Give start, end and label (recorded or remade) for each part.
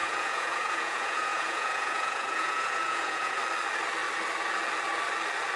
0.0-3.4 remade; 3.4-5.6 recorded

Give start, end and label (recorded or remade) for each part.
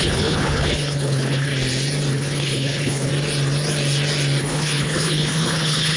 0.0-1.5 remade; 1.5-2.1 recorded; 2.1-3.1 remade; 3.1-4.4 recorded; 4.4-6.0 remade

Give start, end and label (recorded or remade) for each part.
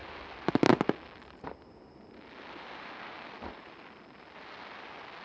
0.0-5.2 recorded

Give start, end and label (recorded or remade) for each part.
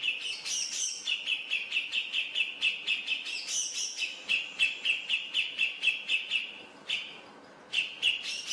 0.0-8.5 recorded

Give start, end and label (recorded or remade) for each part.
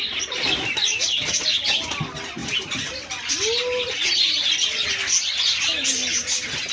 0.0-6.7 recorded